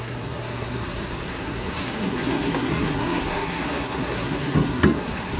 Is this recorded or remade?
remade